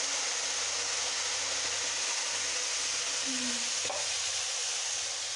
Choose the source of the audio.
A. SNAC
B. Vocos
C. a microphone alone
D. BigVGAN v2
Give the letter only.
C